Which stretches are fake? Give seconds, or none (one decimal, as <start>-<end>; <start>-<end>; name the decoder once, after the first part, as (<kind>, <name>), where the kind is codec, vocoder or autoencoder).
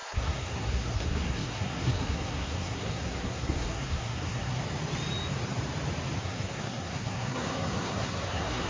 0.0-4.6 (codec, SNAC); 6.2-8.7